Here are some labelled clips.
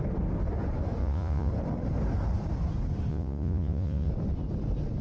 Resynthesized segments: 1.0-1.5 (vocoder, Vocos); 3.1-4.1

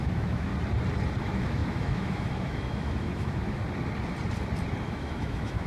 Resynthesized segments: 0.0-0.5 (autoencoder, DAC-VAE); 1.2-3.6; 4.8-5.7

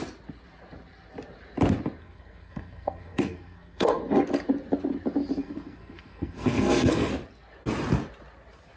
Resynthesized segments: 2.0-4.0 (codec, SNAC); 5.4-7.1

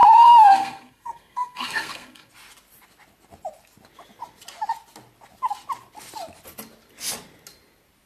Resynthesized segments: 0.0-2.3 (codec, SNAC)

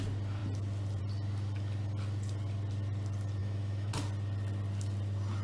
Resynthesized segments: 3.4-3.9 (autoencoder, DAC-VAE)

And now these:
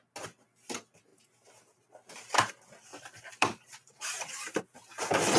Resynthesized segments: 1.1-2.5 (vocoder, BigVGAN v2); 2.9-4.6

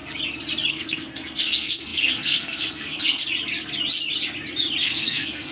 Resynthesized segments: 0.7-3.2 (codec, SNAC); 4.8-5.5

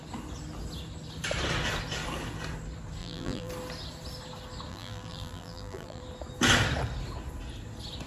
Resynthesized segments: 3.0-3.5 (vocoder, BigVGAN v2); 4.7-6.0